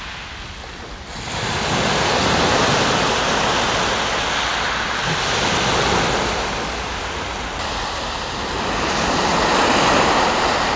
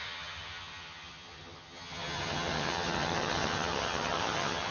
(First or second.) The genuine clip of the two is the first